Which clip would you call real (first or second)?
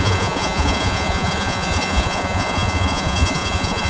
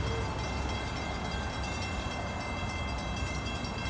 second